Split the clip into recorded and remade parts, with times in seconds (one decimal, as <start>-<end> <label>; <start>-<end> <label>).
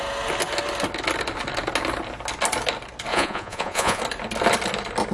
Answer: 0.0-3.1 recorded; 3.1-4.0 remade; 4.0-5.1 recorded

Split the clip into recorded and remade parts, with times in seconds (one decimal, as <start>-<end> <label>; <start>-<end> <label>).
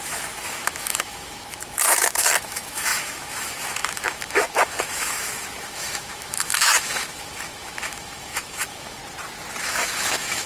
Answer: 0.0-9.0 remade; 9.0-9.6 recorded; 9.6-10.5 remade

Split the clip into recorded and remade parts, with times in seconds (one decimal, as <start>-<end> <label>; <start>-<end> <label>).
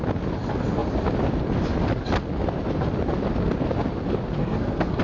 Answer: 0.0-4.4 recorded; 4.4-5.0 remade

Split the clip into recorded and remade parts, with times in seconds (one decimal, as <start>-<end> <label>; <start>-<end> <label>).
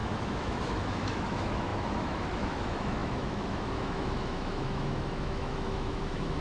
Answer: 0.0-6.4 remade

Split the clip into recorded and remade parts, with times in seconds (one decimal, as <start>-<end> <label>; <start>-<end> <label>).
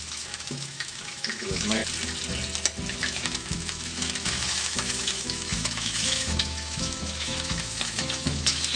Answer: 0.0-1.8 remade; 1.8-2.9 recorded; 2.9-8.8 remade